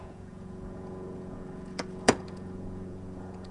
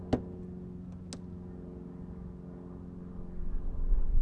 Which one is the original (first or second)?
second